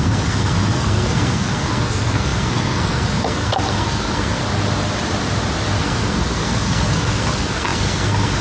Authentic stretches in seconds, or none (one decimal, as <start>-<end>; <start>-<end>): 4.4-5.8